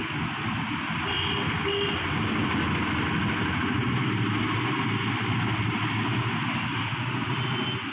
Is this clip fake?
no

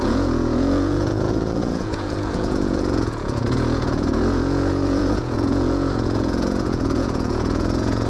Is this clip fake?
yes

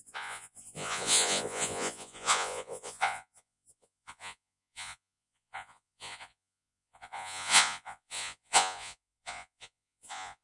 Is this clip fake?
yes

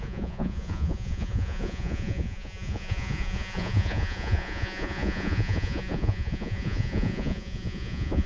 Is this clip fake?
yes